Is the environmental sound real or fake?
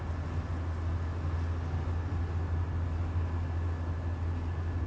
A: real